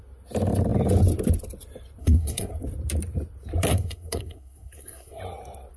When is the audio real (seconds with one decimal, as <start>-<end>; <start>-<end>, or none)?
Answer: 0.0-2.0; 2.5-3.7; 5.2-5.8